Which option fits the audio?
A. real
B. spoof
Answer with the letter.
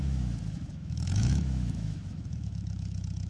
B